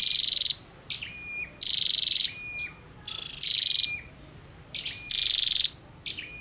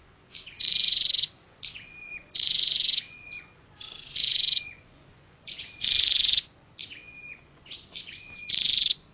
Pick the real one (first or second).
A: first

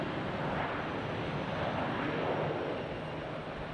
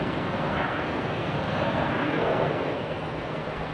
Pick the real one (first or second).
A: first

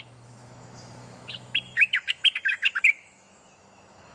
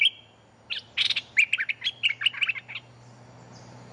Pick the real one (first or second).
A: second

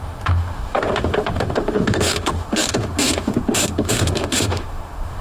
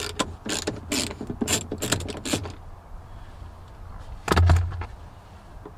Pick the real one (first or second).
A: second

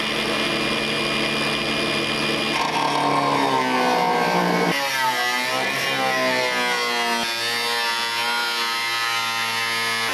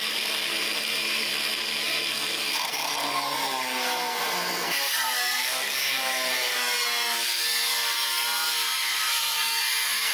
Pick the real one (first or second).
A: first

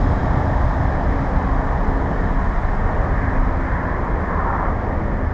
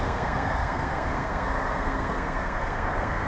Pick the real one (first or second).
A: first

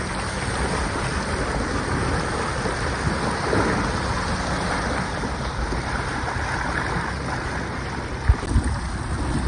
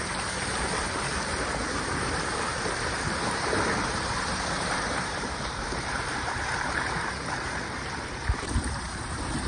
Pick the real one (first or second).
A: first